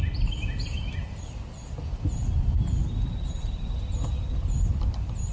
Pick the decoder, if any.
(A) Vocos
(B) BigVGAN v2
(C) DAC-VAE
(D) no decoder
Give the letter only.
D